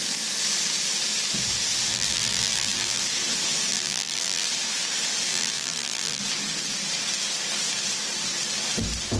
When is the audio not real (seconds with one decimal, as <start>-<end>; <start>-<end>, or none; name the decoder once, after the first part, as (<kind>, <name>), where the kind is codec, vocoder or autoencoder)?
1.9-3.0 (vocoder, BigVGAN v2); 3.7-4.5; 5.3-6.2